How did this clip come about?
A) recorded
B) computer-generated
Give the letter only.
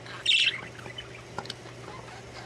A